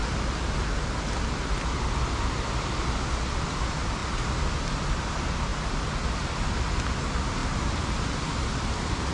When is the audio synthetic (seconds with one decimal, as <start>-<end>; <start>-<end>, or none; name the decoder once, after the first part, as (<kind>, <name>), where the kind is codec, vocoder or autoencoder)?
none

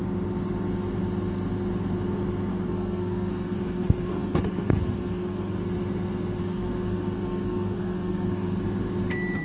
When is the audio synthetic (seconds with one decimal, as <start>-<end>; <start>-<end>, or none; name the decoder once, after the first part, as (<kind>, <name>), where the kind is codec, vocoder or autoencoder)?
2.5-5.6 (codec, SNAC); 6.4-8.6

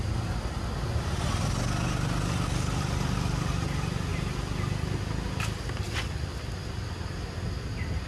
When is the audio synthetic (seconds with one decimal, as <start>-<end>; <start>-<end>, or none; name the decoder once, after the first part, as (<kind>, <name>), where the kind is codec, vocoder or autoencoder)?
none

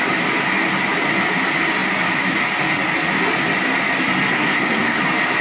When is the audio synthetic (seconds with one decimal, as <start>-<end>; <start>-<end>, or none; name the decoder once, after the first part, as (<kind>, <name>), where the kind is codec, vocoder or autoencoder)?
4.3-5.0 (codec, SNAC)